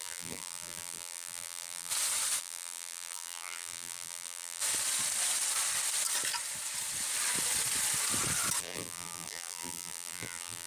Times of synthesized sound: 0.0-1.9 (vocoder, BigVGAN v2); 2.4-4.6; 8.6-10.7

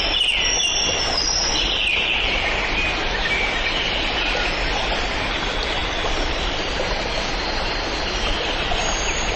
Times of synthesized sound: 0.0-9.4 (vocoder, BigVGAN v2)